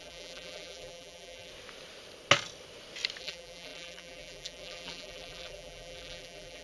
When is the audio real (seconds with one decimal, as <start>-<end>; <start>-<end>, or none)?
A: 1.5-3.2